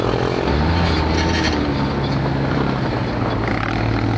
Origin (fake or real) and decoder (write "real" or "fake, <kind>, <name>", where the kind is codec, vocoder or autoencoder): real